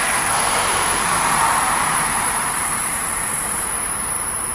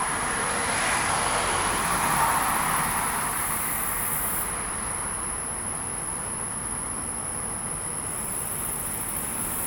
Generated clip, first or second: first